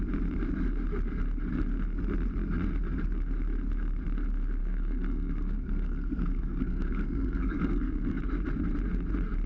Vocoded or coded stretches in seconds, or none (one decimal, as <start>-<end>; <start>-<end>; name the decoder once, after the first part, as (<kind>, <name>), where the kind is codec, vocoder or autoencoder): 4.6-8.2 (codec, SNAC)